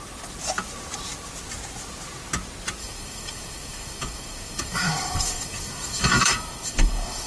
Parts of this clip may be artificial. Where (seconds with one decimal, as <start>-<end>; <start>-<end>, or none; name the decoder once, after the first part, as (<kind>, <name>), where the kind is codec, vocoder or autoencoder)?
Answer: 2.8-7.3 (autoencoder, DAC-VAE)

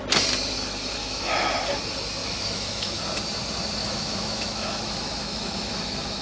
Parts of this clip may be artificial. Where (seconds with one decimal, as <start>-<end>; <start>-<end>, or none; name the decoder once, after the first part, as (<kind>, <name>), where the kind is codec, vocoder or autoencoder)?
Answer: 1.0-1.6 (autoencoder, DAC-VAE); 2.2-3.0; 3.8-6.2

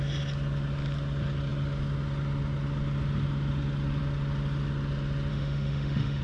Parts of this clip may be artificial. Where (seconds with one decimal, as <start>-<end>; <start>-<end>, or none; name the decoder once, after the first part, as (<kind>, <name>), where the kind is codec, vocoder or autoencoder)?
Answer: 5.3-6.2 (autoencoder, DAC-VAE)

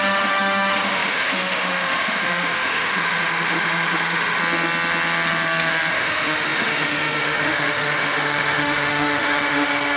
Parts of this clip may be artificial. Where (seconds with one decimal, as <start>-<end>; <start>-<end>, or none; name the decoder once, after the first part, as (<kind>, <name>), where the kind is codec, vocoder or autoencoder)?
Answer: 0.0-4.4 (autoencoder, DAC-VAE); 5.9-10.0

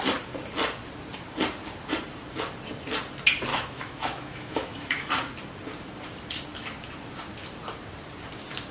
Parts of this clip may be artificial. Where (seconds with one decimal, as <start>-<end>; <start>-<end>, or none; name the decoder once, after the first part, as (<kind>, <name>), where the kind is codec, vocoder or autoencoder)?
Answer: 3.5-5.1 (autoencoder, DAC-VAE)

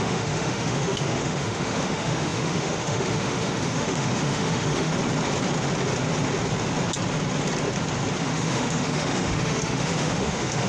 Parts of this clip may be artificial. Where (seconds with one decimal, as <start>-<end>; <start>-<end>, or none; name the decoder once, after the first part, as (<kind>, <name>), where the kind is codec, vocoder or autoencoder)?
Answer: 0.0-4.9 (autoencoder, DAC-VAE); 8.2-10.7

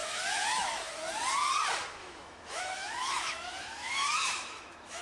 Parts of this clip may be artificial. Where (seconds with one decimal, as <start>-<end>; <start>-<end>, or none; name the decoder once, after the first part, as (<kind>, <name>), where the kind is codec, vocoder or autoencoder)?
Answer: 0.0-0.9 (autoencoder, DAC-VAE); 2.0-5.0

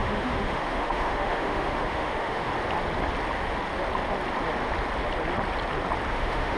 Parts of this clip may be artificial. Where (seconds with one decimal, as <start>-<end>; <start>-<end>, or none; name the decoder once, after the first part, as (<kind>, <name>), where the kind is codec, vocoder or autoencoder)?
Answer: 0.0-2.5 (autoencoder, DAC-VAE); 6.1-6.6